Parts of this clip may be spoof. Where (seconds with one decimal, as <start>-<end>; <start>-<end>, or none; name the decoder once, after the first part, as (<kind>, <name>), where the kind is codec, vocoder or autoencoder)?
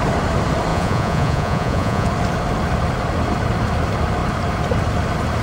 0.7-2.1 (vocoder, Vocos)